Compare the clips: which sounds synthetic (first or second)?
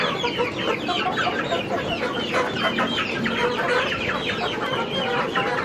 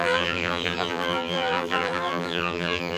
second